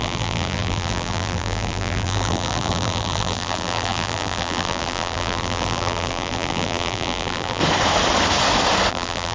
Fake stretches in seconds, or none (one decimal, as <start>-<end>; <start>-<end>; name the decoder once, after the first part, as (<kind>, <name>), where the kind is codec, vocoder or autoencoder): 0.0-7.6 (vocoder, BigVGAN v2); 8.9-9.3